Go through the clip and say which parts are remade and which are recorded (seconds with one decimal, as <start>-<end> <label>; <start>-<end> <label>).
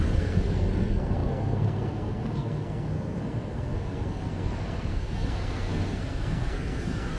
0.0-7.2 remade